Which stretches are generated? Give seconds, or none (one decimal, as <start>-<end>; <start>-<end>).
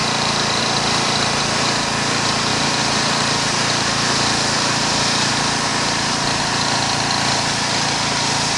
0.0-0.6; 2.5-5.3; 5.7-6.4